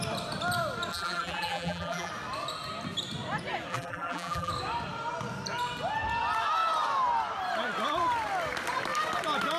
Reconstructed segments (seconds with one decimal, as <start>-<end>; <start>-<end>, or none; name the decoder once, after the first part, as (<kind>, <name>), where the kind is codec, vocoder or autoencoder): 0.9-2.1 (vocoder, BigVGAN v2); 3.7-4.5